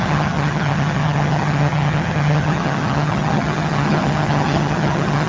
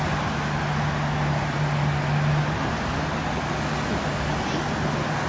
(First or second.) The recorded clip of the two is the second